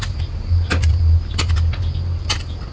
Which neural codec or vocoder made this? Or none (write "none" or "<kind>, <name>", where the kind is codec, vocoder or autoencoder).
none